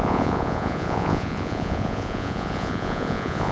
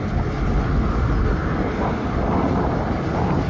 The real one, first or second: second